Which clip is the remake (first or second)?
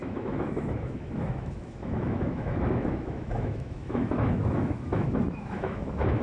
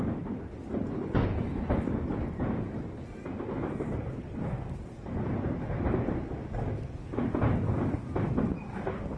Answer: first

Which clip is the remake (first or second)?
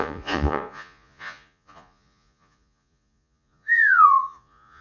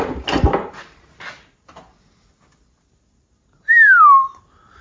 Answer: first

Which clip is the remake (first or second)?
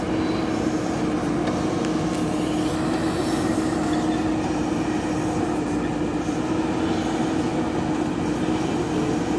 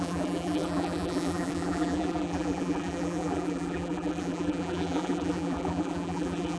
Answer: second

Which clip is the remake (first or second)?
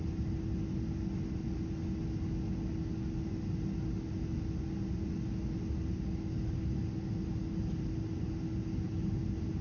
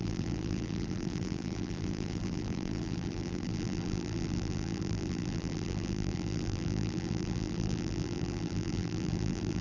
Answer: second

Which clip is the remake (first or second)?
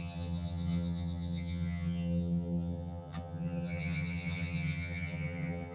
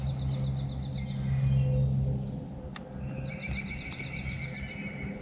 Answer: first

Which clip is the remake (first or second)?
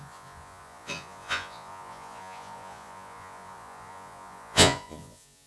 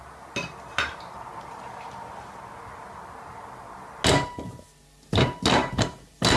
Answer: first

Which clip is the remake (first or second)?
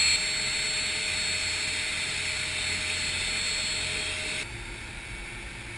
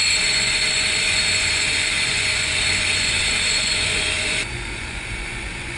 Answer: second